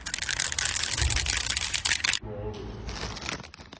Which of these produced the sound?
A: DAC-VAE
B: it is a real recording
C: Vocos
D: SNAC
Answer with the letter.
B